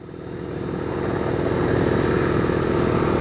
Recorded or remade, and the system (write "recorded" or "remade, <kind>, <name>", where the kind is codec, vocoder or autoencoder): recorded